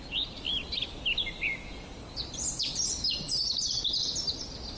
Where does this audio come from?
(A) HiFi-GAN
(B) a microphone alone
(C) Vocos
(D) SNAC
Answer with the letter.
B